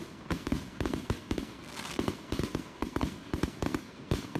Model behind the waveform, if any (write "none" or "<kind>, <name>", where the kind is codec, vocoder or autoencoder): codec, SNAC